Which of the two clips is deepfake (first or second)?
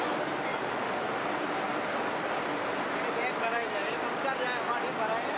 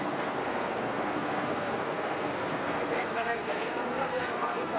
second